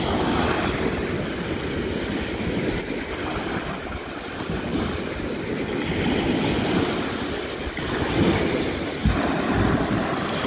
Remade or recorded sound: recorded